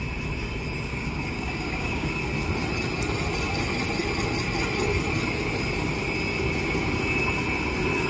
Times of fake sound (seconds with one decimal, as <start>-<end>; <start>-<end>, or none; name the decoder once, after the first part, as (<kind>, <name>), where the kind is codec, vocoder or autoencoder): 0.9-2.2 (codec, DAC)